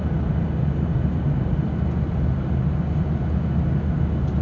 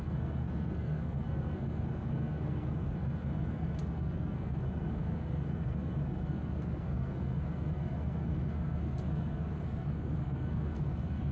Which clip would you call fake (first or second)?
second